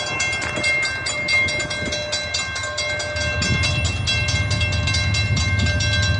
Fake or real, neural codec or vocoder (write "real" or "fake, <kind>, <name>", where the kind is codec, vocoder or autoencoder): real